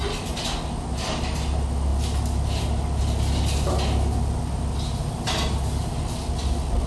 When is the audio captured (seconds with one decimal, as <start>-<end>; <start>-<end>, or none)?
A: 0.0-6.9